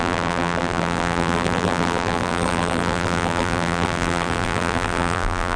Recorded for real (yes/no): no